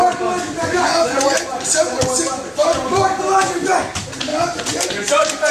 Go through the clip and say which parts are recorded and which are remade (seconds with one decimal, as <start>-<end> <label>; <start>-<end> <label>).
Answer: 0.0-5.5 recorded